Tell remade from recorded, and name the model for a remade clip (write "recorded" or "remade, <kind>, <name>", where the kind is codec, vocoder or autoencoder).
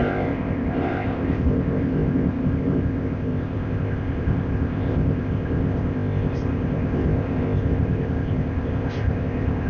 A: remade, codec, ZipCodec